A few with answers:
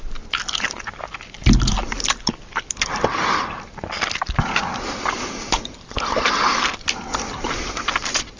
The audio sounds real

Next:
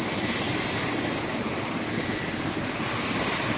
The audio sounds real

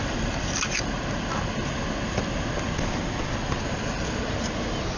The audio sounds real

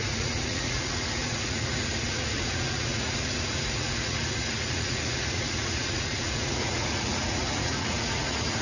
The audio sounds fake